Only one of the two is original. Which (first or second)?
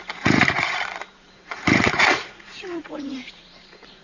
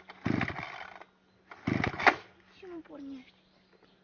second